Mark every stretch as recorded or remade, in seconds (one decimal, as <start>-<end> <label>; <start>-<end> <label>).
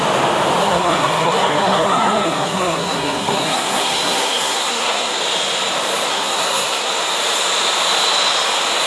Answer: 0.0-0.6 recorded; 0.6-5.2 remade; 5.2-6.1 recorded; 6.1-6.9 remade; 6.9-8.9 recorded